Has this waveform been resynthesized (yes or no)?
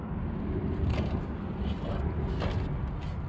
no